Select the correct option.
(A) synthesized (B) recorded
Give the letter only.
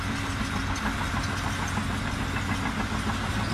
B